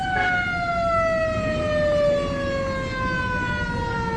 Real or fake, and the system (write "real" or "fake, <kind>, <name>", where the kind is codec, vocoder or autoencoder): real